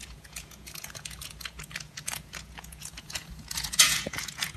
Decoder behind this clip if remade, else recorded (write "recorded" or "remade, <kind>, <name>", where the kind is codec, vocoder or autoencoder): remade, vocoder, Vocos